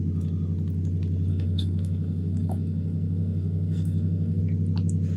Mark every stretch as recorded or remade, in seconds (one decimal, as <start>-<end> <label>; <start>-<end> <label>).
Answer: 0.0-1.3 recorded; 1.3-4.4 remade; 4.4-5.2 recorded